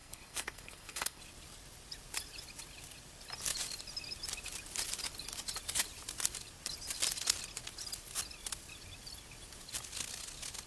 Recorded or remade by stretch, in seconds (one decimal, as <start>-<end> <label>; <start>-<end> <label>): 0.0-1.2 remade; 1.2-10.7 recorded